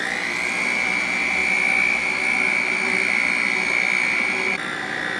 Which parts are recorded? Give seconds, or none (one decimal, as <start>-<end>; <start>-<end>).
0.0-5.2